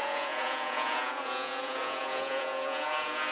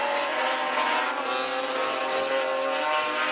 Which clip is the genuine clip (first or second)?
second